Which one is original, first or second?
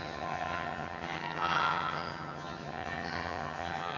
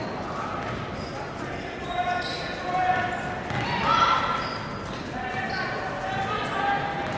second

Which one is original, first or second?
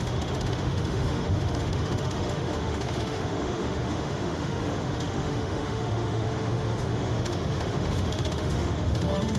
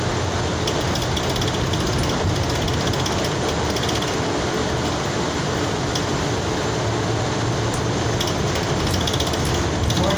second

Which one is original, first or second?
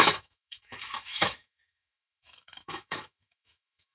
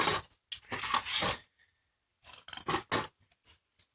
second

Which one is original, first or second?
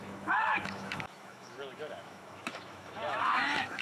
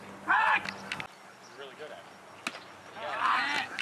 second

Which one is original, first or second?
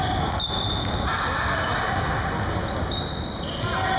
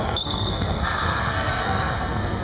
first